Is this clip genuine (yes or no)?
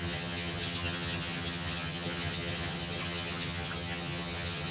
no